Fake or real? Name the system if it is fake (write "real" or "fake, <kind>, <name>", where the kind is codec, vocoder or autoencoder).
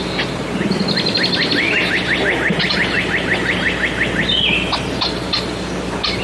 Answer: real